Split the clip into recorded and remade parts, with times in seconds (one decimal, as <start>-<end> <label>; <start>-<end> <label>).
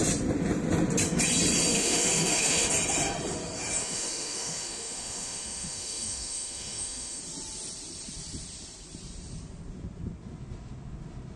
0.0-1.7 recorded; 1.7-2.7 remade; 2.7-3.8 recorded; 3.8-7.2 remade; 7.2-11.4 recorded